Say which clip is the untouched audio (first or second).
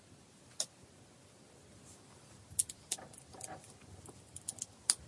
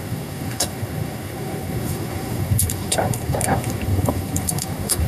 first